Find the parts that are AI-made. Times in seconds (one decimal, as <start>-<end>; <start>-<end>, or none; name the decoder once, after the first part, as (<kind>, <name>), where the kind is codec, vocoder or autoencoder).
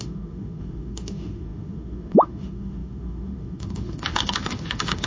0.0-5.1 (autoencoder, DAC-VAE)